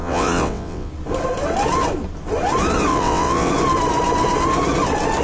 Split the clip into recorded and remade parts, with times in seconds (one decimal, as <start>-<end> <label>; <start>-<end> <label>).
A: 0.0-0.9 remade; 0.9-2.9 recorded; 2.9-3.5 remade; 3.5-5.2 recorded